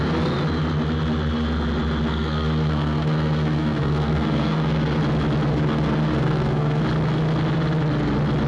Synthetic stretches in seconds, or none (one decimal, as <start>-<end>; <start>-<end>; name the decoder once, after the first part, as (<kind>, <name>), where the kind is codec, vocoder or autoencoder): 2.1-5.0 (codec, SNAC); 5.5-6.8